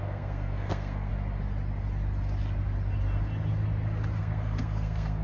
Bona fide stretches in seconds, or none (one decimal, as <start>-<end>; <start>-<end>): 1.1-4.2